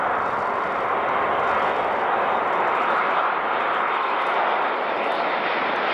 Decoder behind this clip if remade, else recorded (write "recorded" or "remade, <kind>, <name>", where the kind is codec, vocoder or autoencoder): recorded